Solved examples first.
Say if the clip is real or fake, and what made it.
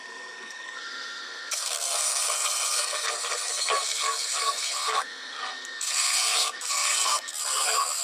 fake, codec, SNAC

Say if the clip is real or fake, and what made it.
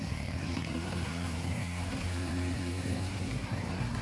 fake, codec, SNAC